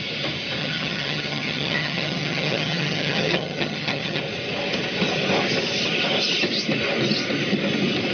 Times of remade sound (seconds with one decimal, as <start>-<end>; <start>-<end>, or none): 0.6-4.2